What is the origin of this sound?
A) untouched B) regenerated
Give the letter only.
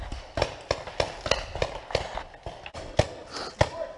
A